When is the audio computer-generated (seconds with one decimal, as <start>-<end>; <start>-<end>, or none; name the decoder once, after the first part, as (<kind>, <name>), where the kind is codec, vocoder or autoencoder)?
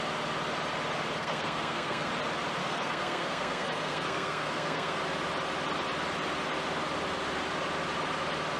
1.2-2.1 (codec, SNAC); 2.6-5.0